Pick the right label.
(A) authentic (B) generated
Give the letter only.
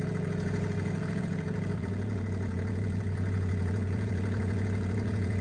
B